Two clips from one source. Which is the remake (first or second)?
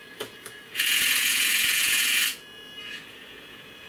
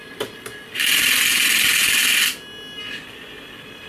first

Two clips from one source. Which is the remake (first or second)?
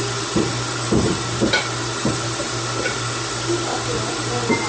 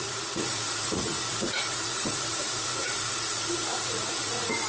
second